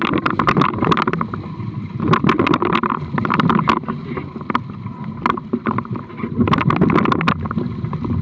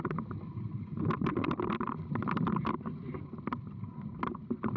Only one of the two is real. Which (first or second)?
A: first